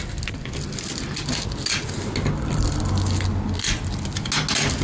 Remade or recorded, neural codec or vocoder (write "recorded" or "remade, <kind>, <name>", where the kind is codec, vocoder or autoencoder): recorded